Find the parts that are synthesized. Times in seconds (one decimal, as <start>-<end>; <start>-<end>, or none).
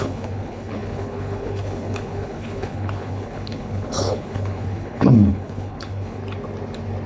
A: 0.0-6.2